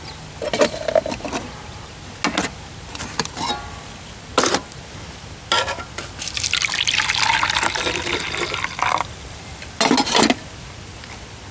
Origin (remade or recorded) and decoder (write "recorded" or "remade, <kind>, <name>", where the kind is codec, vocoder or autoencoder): recorded